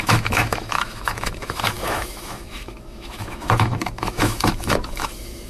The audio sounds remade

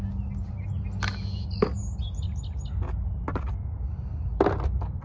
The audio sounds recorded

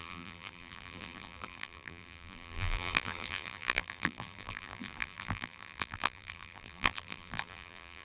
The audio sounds remade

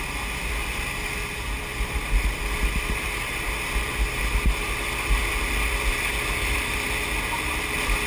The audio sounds recorded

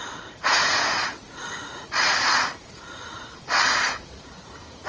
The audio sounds remade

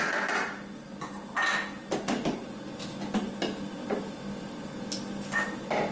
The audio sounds recorded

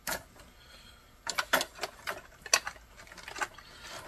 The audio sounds recorded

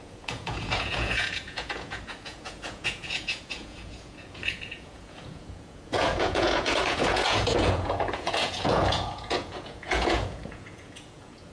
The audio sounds remade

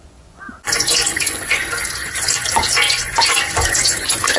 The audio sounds remade